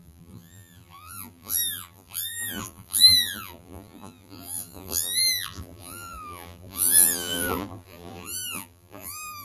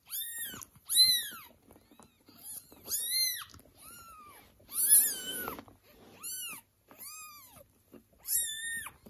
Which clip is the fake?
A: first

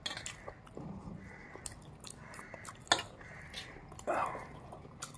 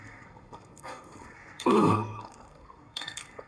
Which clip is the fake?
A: second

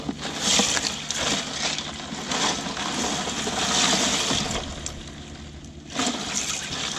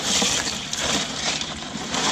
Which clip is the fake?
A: second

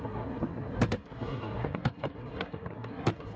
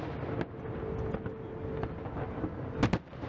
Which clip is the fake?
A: first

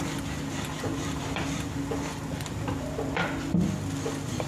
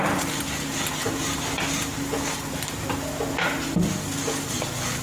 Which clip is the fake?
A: first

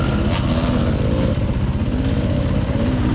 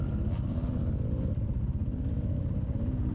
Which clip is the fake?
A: second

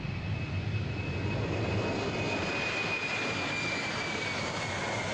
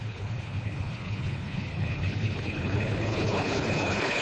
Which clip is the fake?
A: second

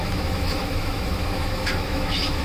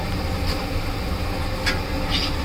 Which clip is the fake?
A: first